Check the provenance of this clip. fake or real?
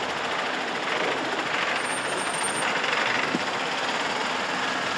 real